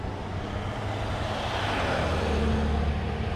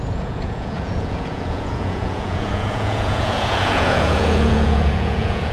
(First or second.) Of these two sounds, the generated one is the second